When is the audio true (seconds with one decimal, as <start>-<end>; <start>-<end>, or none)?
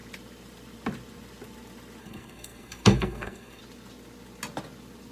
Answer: 0.0-2.0; 3.6-5.1